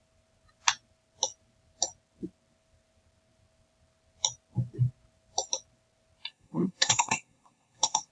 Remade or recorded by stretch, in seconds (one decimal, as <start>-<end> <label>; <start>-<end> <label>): 0.0-6.3 recorded; 6.3-8.1 remade